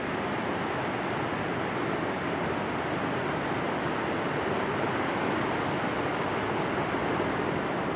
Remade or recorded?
recorded